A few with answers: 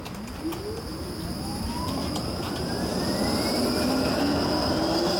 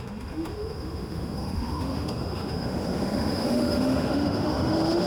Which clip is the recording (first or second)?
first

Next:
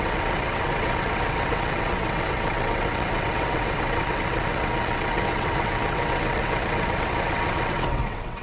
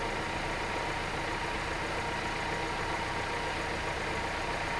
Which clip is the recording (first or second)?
second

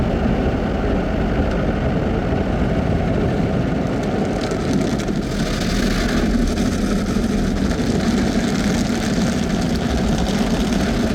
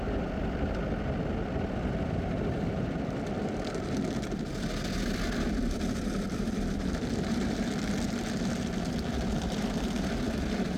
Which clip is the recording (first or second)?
first